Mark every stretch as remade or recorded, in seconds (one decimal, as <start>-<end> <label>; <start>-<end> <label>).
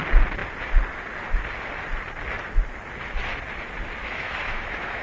0.0-4.0 recorded; 4.0-5.0 remade